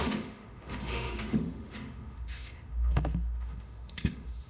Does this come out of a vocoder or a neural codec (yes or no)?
yes